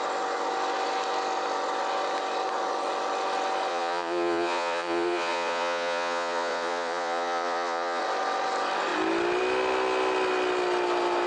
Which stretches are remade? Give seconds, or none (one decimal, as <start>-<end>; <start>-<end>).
3.7-8.0